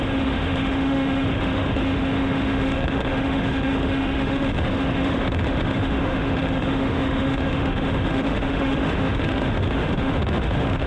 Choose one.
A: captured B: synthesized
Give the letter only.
B